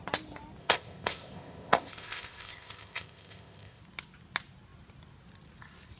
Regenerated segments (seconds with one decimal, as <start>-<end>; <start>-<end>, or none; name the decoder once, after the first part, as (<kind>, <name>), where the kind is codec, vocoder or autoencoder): 0.6-3.8 (codec, ZipCodec)